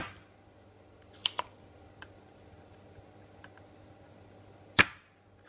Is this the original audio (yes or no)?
yes